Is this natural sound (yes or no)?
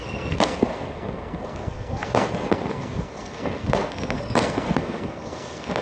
no